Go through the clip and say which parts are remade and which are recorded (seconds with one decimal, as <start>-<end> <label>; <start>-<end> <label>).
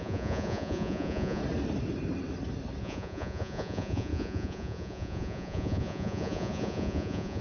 0.0-1.4 remade; 1.4-2.8 recorded; 2.8-7.4 remade